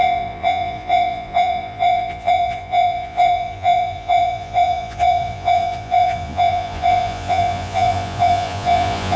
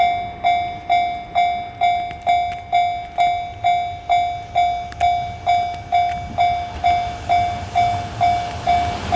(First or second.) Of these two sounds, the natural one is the second